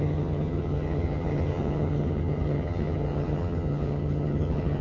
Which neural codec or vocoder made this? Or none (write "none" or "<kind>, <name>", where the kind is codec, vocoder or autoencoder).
vocoder, HiFi-GAN